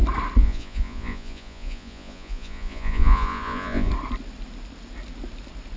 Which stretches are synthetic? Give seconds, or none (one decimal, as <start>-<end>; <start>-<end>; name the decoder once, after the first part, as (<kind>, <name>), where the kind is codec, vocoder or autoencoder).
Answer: 0.4-3.9 (vocoder, Vocos)